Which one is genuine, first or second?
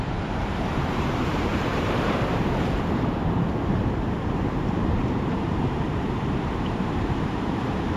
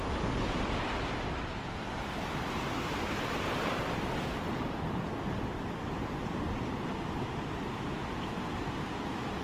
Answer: second